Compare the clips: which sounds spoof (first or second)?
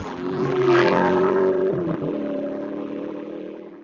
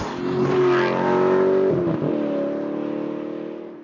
first